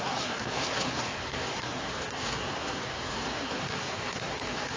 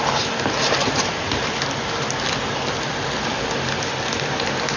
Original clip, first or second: second